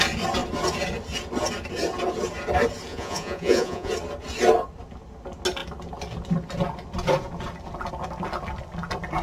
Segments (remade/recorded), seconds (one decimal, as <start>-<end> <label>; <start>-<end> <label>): 0.0-2.9 recorded; 2.9-3.9 remade; 3.9-9.2 recorded